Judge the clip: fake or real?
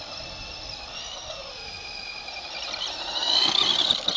real